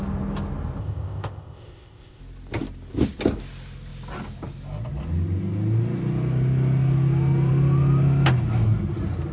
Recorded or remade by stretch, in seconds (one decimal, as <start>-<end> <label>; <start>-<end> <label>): 0.0-0.8 recorded; 0.8-2.2 remade; 2.2-9.3 recorded